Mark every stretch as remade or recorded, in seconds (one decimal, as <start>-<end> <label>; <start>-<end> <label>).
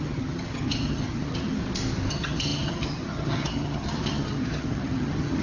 0.0-1.6 remade; 1.6-2.1 recorded; 2.1-5.4 remade